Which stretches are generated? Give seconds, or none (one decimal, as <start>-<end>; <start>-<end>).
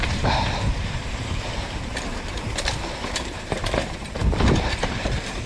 0.0-4.2; 4.8-5.5